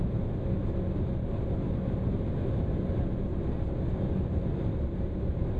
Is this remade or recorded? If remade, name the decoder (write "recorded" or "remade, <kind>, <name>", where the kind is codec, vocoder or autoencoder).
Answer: recorded